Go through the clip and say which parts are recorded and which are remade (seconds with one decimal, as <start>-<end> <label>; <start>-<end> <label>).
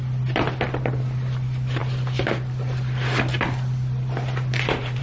0.0-5.0 recorded